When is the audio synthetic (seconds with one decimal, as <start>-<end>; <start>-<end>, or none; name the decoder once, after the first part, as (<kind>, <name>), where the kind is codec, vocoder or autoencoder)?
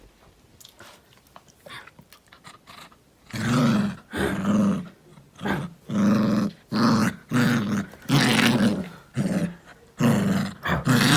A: 0.0-5.1 (vocoder, BigVGAN v2); 6.5-7.0; 8.8-9.7; 10.4-11.2